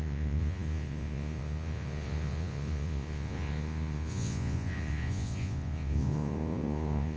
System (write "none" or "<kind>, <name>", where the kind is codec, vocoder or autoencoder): vocoder, Vocos